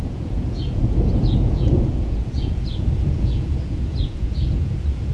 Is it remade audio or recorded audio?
remade